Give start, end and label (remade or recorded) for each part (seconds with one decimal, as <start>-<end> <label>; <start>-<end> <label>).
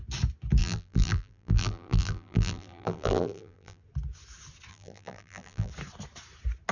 0.0-0.6 recorded; 0.6-3.8 remade; 3.8-4.7 recorded; 4.7-5.7 remade; 5.7-6.7 recorded